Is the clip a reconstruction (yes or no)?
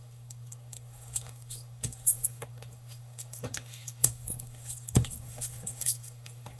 yes